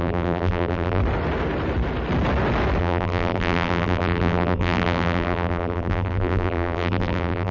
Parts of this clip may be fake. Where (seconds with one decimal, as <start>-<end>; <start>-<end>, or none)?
0.0-1.0; 2.8-7.5